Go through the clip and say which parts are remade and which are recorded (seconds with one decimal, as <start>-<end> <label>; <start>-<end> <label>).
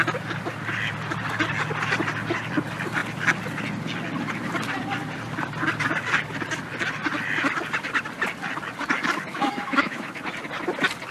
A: 0.0-9.3 recorded; 9.3-10.1 remade; 10.1-11.1 recorded